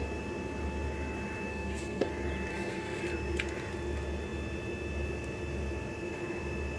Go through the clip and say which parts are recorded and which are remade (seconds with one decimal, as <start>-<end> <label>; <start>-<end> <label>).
0.0-1.5 recorded; 1.5-2.1 remade; 2.1-2.5 recorded; 2.5-3.0 remade; 3.0-6.8 recorded

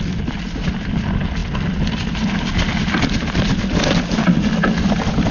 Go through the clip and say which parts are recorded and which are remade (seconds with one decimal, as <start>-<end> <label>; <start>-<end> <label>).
0.0-5.3 recorded

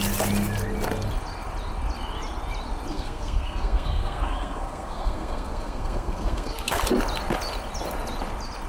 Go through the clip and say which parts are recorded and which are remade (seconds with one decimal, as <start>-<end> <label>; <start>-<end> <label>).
0.0-2.9 recorded; 2.9-6.8 remade; 6.8-8.7 recorded

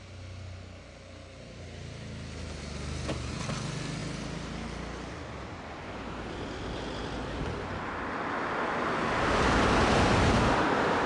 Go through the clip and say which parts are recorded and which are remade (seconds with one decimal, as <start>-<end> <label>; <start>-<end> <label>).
0.0-11.1 recorded

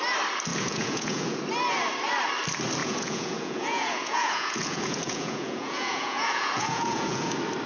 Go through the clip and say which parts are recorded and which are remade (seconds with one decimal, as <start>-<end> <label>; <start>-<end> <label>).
0.0-0.5 recorded; 0.5-1.4 remade; 1.4-2.8 recorded; 2.8-7.3 remade; 7.3-7.7 recorded